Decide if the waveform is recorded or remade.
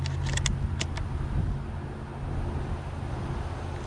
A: recorded